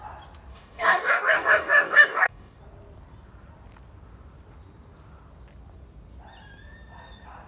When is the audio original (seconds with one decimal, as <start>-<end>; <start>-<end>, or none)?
0.0-0.5; 2.6-7.5